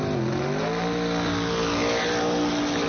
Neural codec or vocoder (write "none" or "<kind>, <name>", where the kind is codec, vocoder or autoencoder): none